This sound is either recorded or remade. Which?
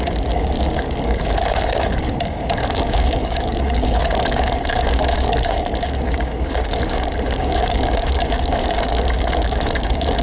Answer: remade